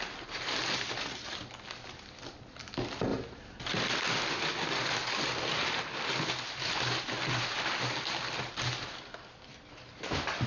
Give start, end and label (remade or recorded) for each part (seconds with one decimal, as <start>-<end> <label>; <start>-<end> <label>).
0.0-3.1 recorded; 3.1-3.9 remade; 3.9-10.5 recorded